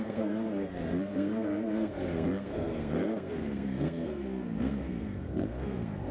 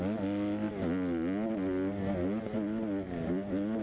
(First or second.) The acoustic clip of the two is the second